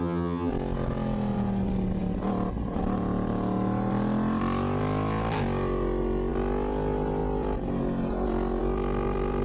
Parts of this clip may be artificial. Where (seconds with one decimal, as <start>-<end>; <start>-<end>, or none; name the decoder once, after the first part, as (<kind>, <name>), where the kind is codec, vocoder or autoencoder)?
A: 0.0-0.5 (vocoder, HiFi-GAN)